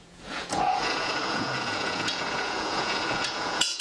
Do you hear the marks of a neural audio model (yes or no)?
yes